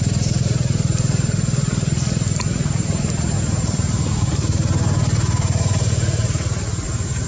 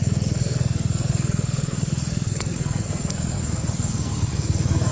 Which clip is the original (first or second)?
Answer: first